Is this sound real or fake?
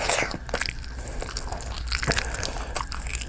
real